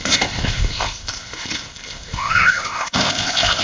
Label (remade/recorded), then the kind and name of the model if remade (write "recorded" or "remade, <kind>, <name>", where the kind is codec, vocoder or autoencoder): remade, codec, ZipCodec